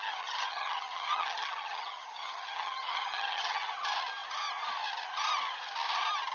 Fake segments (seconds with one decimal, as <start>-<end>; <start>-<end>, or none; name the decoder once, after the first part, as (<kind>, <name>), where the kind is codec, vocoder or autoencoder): 0.0-3.7 (vocoder, HiFi-GAN)